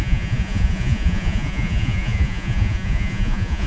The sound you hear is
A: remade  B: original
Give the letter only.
A